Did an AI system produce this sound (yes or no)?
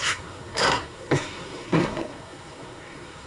yes